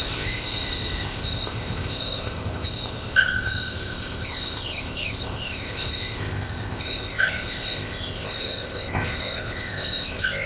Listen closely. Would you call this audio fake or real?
fake